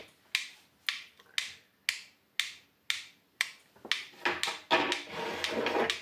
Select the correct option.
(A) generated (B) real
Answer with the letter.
B